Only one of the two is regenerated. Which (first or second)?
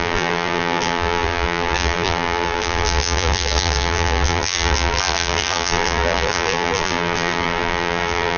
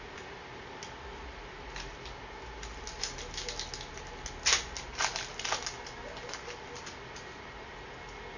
first